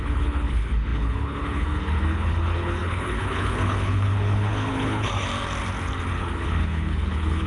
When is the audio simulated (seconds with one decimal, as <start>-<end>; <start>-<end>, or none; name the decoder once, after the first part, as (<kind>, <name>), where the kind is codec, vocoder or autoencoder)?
0.0-5.3 (codec, HILCodec); 6.1-7.5